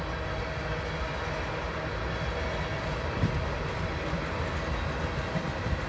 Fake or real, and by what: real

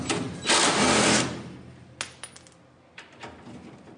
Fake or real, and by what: real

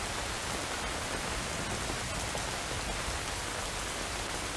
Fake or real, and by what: real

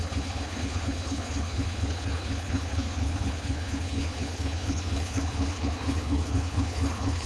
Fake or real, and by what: fake, codec, HILCodec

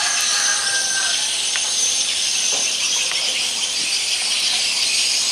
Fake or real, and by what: fake, vocoder, BigVGAN v2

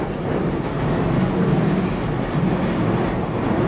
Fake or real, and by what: real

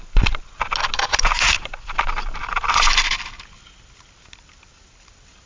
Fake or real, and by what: real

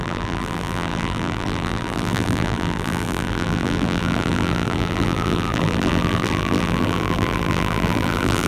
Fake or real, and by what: fake, vocoder, BigVGAN v2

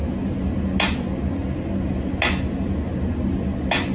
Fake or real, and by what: real